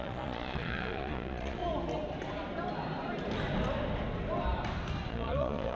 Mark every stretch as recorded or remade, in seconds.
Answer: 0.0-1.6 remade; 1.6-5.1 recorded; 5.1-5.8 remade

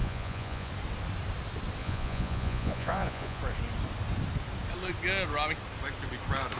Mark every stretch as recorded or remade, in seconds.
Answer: 0.0-0.7 remade; 0.7-1.8 recorded; 1.8-3.4 remade; 3.4-6.6 recorded

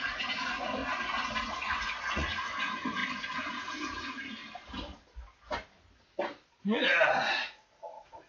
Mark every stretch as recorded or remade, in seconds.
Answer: 0.0-0.8 remade; 0.8-1.5 recorded; 1.5-4.4 remade; 4.4-6.6 recorded; 6.6-8.3 remade